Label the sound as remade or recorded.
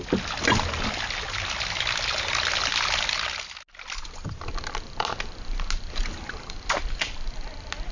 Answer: recorded